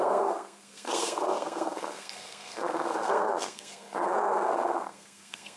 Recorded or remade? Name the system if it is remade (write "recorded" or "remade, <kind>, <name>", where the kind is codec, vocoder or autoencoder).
remade, codec, SNAC